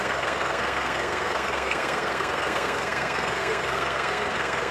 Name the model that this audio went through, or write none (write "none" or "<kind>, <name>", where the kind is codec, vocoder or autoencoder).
codec, SNAC